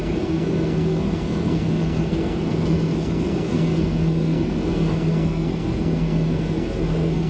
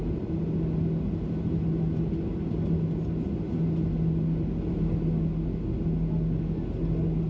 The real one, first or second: second